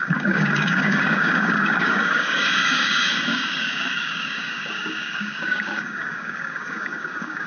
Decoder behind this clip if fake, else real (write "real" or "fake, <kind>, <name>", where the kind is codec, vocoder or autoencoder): fake, codec, DAC